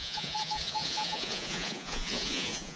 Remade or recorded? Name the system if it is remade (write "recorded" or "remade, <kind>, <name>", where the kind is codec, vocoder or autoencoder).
remade, vocoder, Vocos